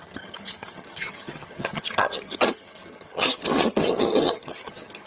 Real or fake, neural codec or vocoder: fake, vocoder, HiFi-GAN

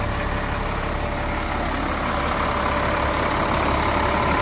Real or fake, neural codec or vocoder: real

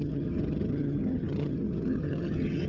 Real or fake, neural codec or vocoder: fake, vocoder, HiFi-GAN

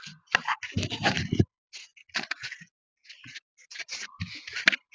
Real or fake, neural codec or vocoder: real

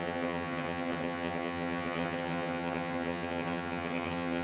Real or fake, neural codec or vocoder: fake, vocoder, HiFi-GAN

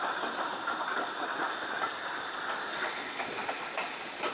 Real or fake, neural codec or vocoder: real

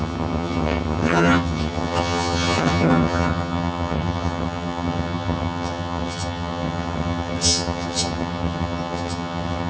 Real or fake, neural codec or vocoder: fake, vocoder, HiFi-GAN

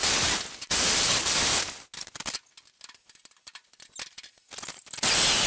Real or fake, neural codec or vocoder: real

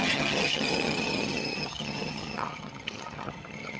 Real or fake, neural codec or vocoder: fake, vocoder, HiFi-GAN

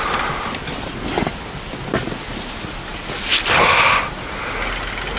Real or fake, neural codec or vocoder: real